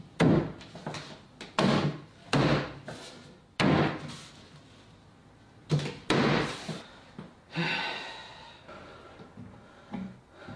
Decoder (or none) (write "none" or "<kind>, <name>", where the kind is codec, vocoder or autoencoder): none